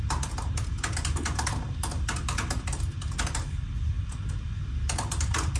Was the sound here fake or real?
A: real